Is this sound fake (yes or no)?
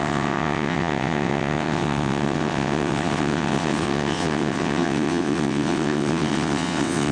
yes